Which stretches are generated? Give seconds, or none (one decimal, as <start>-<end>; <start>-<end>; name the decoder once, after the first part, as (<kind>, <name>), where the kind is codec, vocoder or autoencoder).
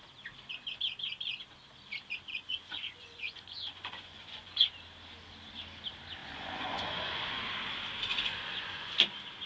2.3-4.7 (vocoder, Vocos); 6.2-7.4; 8.1-9.0